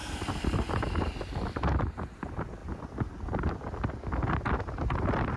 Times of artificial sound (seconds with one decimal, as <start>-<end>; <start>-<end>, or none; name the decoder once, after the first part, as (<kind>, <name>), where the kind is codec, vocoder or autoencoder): none